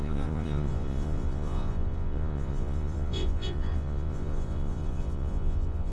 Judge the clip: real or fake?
fake